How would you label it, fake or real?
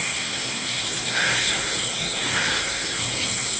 fake